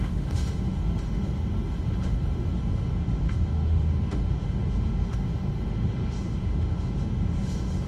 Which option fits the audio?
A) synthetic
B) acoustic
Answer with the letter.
A